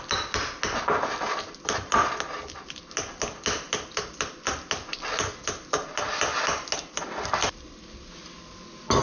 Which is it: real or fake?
real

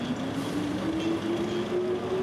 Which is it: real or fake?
real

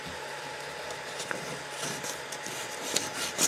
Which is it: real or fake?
real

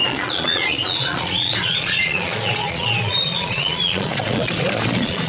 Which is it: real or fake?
fake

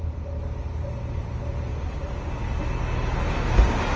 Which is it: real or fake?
real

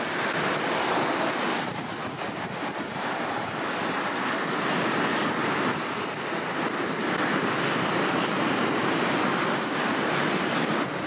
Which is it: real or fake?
real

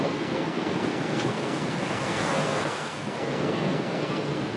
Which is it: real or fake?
fake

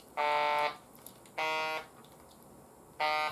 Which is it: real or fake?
real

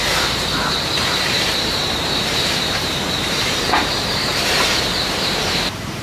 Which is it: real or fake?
fake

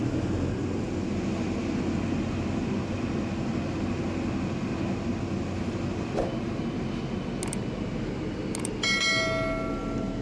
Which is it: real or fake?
real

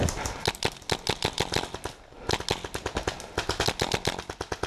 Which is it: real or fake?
real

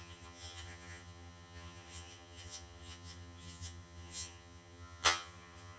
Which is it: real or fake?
fake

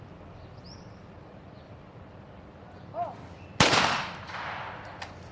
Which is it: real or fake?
real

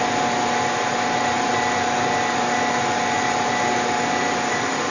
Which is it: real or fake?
real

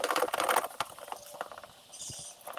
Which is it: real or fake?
real